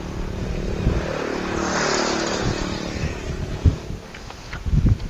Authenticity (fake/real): real